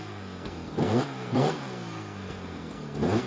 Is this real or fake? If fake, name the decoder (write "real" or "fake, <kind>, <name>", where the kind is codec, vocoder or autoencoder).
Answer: fake, codec, SNAC